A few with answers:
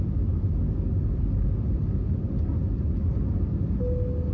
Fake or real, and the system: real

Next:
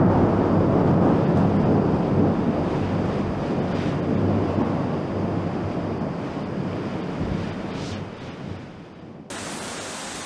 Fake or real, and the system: real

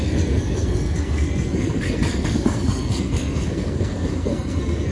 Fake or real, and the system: fake, codec, SNAC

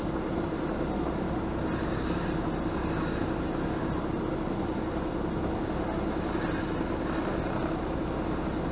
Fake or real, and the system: real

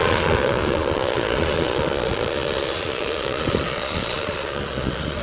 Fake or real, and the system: fake, vocoder, Vocos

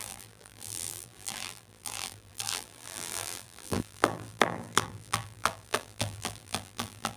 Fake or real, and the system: fake, vocoder, BigVGAN v2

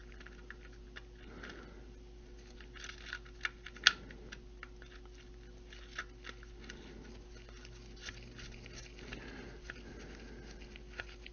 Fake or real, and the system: real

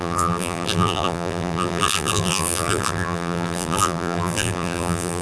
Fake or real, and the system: fake, vocoder, BigVGAN v2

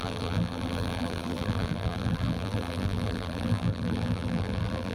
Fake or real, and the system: fake, vocoder, BigVGAN v2